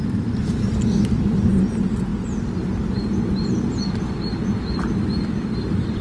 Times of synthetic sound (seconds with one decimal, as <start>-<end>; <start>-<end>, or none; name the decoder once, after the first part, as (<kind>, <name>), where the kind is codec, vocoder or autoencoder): none